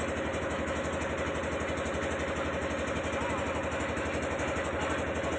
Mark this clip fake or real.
real